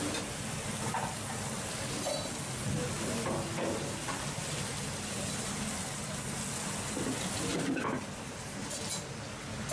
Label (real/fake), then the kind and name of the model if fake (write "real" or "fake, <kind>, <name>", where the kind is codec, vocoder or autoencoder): real